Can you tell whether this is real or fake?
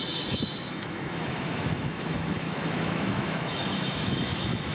fake